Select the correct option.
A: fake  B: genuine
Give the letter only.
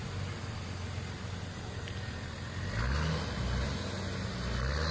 B